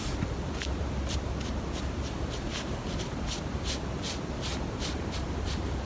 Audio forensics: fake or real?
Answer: real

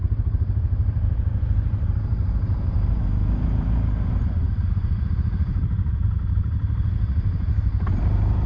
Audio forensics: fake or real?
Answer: fake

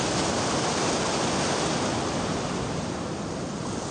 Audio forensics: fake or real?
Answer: real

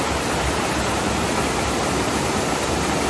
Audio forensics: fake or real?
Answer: real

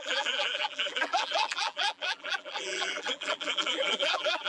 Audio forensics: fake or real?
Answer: fake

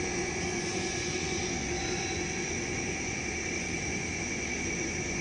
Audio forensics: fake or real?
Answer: fake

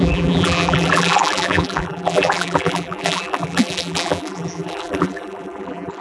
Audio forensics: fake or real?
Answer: fake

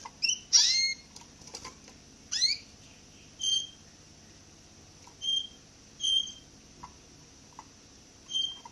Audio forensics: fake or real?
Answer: real